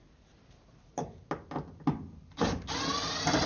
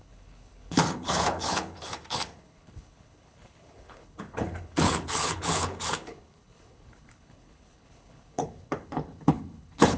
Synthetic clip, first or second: second